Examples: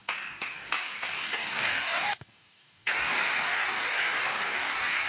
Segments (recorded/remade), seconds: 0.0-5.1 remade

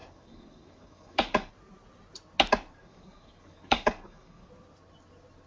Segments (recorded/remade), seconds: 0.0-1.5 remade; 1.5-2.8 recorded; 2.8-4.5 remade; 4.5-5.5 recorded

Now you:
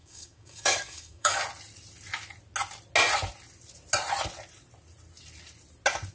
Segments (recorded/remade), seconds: 0.0-1.4 remade; 1.4-6.1 recorded

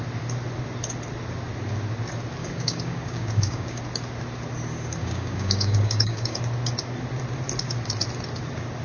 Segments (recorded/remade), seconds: 0.0-2.4 recorded; 2.4-3.8 remade; 3.8-5.0 recorded; 5.0-6.4 remade; 6.4-8.8 recorded

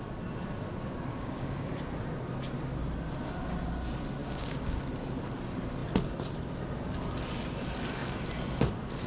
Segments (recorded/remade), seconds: 0.0-1.1 recorded; 1.1-1.7 remade; 1.7-4.2 recorded; 4.2-4.8 remade; 4.8-9.1 recorded

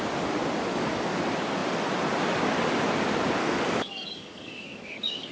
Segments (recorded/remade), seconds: 0.0-0.7 recorded; 0.7-1.2 remade; 1.2-3.4 recorded; 3.4-5.3 remade

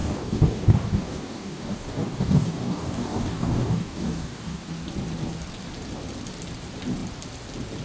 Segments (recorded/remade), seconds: 0.0-4.7 remade; 4.7-7.8 recorded